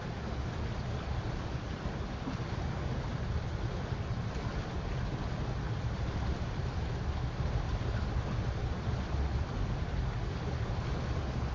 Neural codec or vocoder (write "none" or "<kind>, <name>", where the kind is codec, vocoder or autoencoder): none